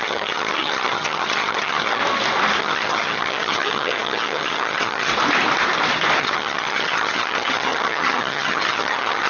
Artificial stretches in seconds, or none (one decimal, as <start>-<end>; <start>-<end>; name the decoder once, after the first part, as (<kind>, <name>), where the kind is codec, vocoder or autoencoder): 0.0-2.0 (vocoder, HiFi-GAN); 2.6-5.1; 6.2-9.3